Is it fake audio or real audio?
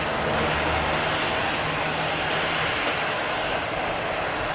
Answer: real